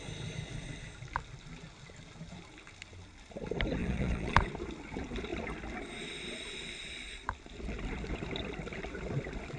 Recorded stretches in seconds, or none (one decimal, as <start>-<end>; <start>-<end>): 0.0-3.8; 4.5-9.6